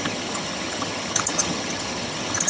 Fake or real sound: fake